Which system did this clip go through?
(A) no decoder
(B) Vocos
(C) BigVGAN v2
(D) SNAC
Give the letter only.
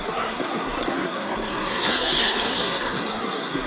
D